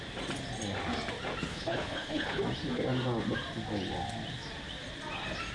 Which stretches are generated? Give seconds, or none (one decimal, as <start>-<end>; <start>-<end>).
1.5-2.4